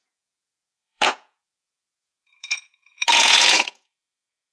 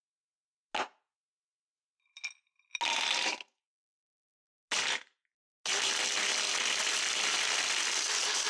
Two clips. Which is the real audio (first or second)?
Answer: second